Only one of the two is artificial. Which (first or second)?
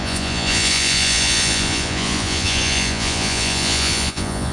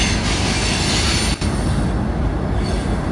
first